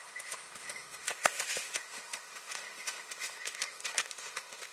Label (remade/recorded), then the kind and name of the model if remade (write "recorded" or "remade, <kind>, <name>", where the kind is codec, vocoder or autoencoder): remade, autoencoder, DAC-VAE